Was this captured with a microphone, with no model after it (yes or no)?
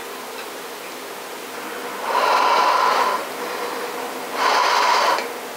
yes